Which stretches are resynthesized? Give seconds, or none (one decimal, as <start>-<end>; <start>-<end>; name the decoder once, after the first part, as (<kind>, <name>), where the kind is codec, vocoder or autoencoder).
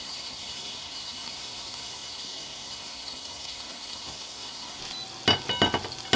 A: 0.0-4.8 (codec, SNAC)